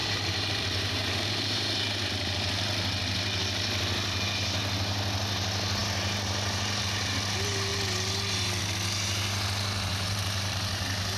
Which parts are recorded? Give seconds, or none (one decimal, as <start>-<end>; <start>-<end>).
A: 2.1-9.9; 10.7-11.2

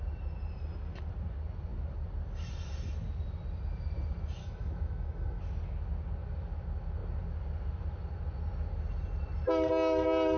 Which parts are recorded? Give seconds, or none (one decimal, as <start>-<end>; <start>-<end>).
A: 0.0-4.4; 5.4-10.4

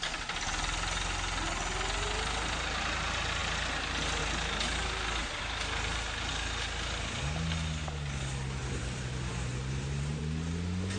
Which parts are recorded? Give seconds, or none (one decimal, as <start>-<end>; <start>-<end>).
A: 0.0-5.2; 6.3-8.6; 10.2-11.0